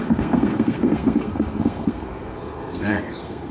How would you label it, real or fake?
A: fake